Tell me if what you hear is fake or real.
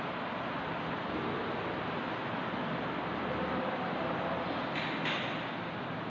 real